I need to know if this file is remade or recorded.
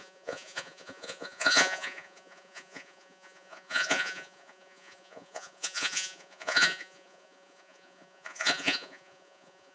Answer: remade